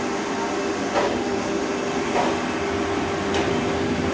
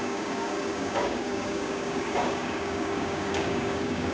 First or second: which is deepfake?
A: second